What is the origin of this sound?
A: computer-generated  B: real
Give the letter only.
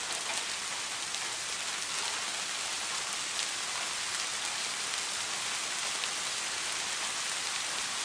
B